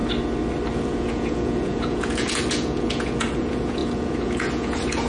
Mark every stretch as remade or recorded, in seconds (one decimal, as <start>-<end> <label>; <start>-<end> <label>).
0.0-0.7 recorded; 0.7-5.1 remade